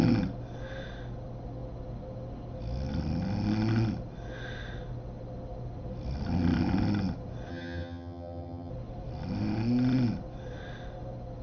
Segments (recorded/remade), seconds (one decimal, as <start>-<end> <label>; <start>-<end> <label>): 0.0-7.5 recorded; 7.5-8.7 remade; 8.7-11.4 recorded